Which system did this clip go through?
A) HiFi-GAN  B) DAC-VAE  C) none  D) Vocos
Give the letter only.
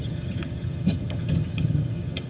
A